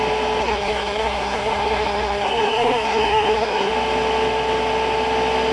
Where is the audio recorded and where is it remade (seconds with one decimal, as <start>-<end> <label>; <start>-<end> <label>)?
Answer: 0.0-0.4 recorded; 0.4-3.7 remade; 3.7-5.5 recorded